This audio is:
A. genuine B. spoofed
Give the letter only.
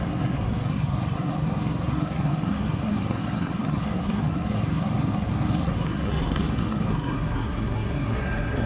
B